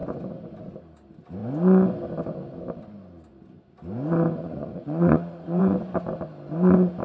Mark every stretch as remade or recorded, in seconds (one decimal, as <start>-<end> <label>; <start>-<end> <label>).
0.0-4.4 recorded; 4.4-5.6 remade; 5.6-7.0 recorded